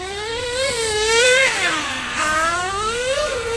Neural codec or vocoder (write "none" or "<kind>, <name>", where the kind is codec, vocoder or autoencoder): codec, SNAC